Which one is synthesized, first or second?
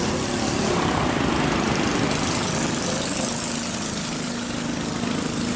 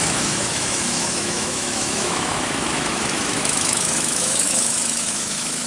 second